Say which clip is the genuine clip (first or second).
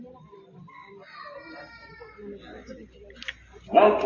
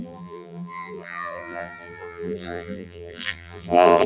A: first